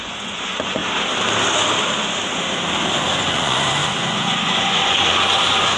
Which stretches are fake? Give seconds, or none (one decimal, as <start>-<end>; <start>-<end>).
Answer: 0.0-0.8; 3.1-5.8